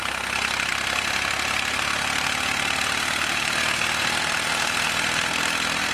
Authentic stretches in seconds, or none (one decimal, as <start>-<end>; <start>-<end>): 0.0-5.9